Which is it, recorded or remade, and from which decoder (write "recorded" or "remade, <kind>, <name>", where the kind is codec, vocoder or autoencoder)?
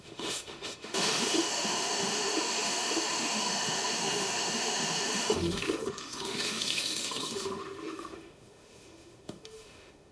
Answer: remade, autoencoder, DAC-VAE